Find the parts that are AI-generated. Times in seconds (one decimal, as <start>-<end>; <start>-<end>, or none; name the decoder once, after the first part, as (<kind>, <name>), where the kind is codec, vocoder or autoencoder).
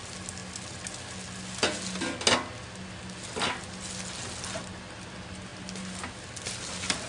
none